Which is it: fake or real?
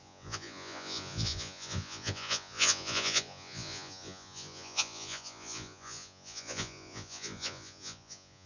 fake